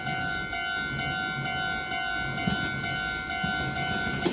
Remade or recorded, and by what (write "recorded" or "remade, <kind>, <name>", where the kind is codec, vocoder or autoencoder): recorded